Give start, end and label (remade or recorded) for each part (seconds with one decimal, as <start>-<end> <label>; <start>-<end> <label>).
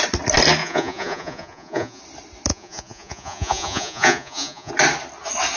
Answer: 0.0-0.6 recorded; 0.6-2.0 remade; 2.0-2.5 recorded; 2.5-4.7 remade; 4.7-5.6 recorded